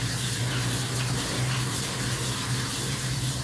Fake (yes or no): no